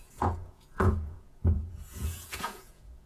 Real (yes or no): no